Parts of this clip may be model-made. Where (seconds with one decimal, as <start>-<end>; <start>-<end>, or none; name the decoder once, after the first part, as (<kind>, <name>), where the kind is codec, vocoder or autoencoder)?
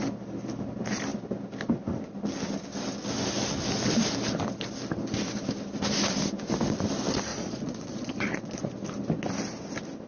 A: 7.3-8.7 (vocoder, Vocos)